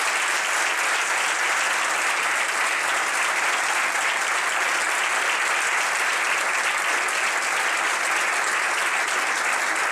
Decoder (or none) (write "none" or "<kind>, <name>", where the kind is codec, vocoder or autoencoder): none